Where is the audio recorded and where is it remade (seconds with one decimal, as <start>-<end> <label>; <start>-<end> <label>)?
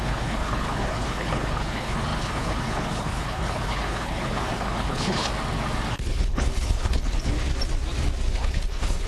0.0-5.3 remade; 5.3-5.9 recorded; 5.9-7.5 remade; 7.5-8.3 recorded; 8.3-9.1 remade